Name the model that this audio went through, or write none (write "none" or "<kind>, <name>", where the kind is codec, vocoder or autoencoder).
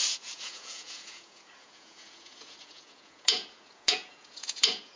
vocoder, Vocos